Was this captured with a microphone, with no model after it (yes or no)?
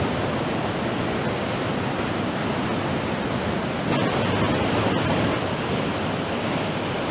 yes